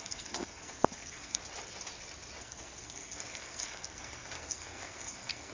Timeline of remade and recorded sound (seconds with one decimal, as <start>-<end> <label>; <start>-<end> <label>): 0.0-1.4 remade; 1.4-2.4 recorded; 2.4-5.5 remade